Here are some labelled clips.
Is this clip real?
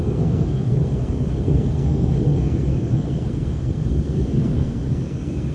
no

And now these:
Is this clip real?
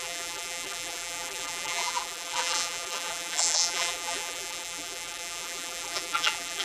no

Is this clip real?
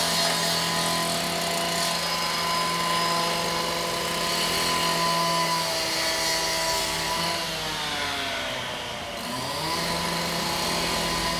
yes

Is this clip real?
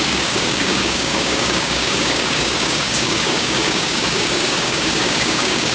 no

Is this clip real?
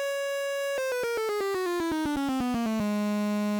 no